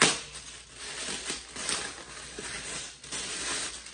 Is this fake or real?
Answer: real